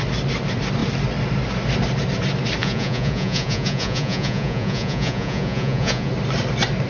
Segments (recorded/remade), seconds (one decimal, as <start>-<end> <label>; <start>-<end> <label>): 0.0-2.6 recorded; 2.6-6.1 remade; 6.1-6.9 recorded